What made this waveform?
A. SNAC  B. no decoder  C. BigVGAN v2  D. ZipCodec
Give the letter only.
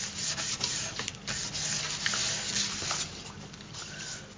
B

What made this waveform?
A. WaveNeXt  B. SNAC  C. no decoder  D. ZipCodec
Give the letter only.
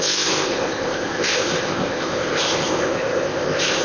D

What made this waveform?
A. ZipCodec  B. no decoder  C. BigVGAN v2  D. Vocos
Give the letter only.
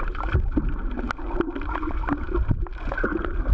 B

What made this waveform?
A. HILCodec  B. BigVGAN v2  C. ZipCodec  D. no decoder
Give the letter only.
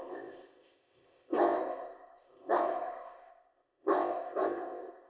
C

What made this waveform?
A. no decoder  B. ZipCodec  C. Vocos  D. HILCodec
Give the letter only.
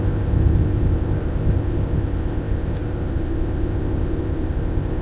B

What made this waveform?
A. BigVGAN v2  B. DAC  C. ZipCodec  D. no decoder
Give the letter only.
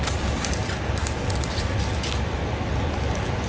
D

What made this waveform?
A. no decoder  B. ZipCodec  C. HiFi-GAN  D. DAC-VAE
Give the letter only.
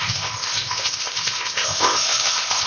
B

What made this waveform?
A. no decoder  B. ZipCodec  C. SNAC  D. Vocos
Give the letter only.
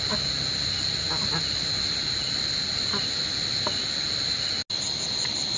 A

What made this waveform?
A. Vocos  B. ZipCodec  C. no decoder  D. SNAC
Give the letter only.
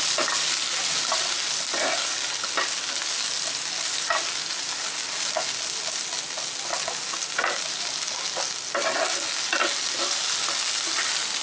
C